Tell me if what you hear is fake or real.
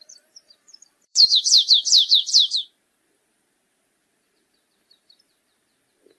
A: fake